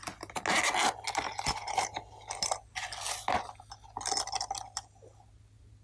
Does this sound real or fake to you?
real